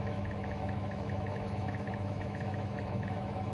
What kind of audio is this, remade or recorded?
remade